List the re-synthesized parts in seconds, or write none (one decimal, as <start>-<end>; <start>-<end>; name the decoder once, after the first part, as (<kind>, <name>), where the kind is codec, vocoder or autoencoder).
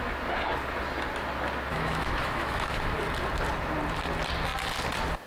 1.7-3.0 (autoencoder, DAC-VAE)